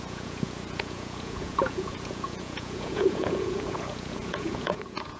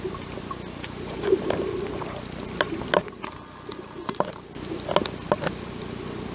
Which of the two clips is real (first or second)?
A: second